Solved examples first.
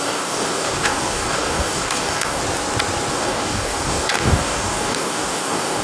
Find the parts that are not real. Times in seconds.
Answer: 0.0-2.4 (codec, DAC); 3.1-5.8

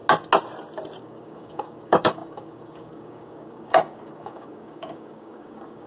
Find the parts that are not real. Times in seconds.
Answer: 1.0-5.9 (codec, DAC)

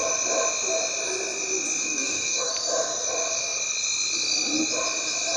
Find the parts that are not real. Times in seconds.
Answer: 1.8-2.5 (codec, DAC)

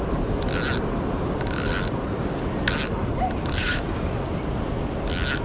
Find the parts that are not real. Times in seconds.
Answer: 3.6-4.1 (codec, DAC)

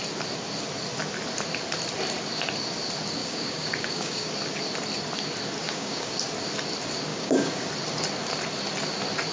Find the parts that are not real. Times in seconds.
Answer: 3.2-4.3 (codec, DAC); 5.6-6.1; 7.1-7.7

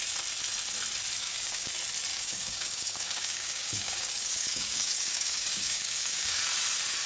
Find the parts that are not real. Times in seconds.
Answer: 1.2-1.7 (codec, DAC); 2.1-6.4

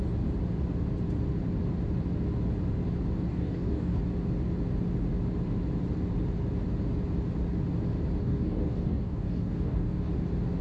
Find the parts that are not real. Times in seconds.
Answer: 3.3-4.0 (codec, DAC); 8.2-10.1

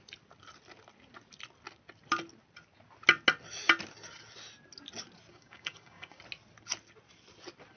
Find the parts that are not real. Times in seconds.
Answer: 5.3-6.2 (codec, DAC)